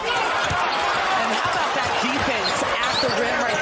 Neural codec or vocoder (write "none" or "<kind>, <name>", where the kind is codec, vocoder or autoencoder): none